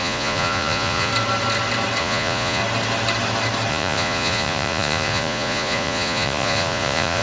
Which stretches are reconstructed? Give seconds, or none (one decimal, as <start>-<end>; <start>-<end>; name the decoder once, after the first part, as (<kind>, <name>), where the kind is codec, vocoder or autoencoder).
0.0-1.1 (vocoder, Vocos); 2.0-2.6; 3.7-7.2